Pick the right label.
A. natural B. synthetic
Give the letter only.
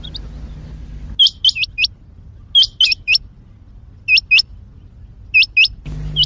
A